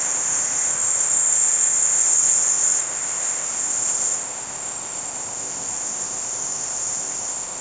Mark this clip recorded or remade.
remade